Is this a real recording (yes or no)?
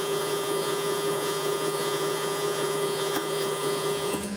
no